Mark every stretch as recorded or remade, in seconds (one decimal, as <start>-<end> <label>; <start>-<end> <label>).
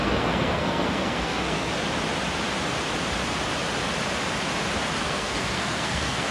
0.0-1.7 remade; 1.7-5.0 recorded; 5.0-6.3 remade